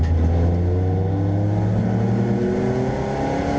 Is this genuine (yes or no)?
yes